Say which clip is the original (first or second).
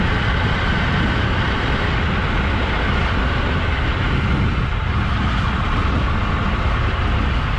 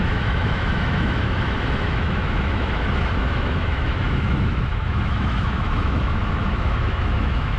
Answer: first